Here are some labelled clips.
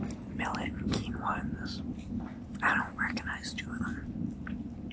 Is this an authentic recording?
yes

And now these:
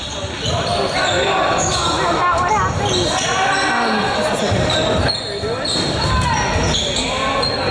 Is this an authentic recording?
yes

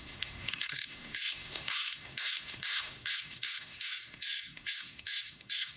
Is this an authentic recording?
no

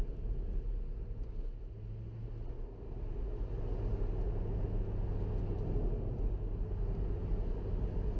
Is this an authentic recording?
yes